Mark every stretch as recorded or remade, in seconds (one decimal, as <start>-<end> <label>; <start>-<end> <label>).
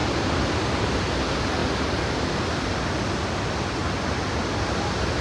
0.0-0.9 remade; 0.9-5.2 recorded